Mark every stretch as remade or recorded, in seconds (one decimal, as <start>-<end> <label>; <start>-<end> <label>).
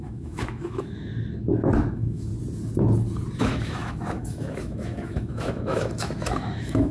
0.0-1.1 remade; 1.1-1.9 recorded; 1.9-2.3 remade; 2.3-3.4 recorded; 3.4-6.9 remade